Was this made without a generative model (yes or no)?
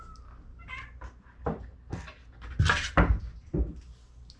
yes